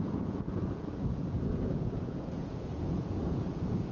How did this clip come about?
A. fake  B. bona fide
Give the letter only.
A